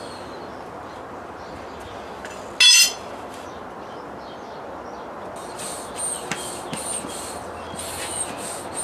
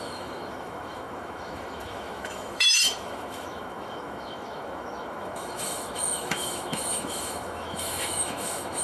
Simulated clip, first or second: second